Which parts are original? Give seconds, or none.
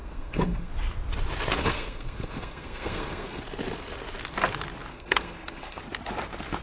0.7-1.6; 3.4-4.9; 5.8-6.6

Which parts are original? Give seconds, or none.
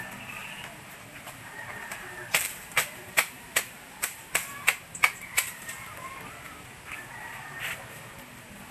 0.0-0.4; 5.5-8.7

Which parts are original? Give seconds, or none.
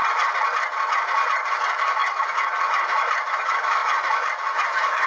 0.0-1.5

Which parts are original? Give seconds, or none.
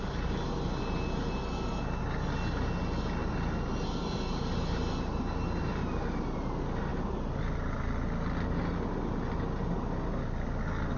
0.0-3.2; 5.8-6.9; 7.4-11.0